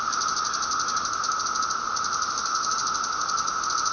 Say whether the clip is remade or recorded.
recorded